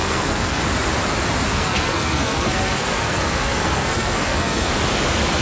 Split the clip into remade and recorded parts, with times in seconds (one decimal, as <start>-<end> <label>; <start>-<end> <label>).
0.0-0.6 remade; 0.6-1.5 recorded; 1.5-4.7 remade; 4.7-5.4 recorded